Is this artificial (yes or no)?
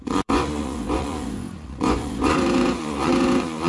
yes